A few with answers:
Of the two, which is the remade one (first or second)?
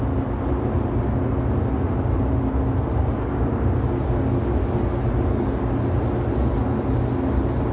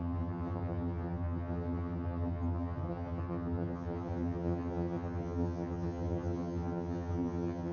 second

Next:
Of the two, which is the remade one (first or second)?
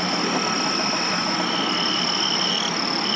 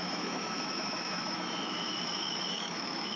second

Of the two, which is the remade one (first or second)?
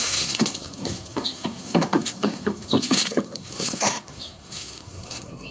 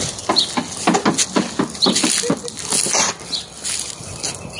first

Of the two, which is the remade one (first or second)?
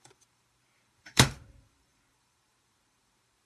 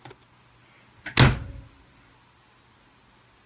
first